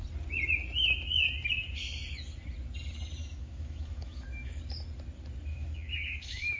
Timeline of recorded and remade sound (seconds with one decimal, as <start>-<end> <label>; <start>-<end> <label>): 0.0-3.2 recorded; 3.2-4.6 remade; 4.6-5.5 recorded; 5.5-6.6 remade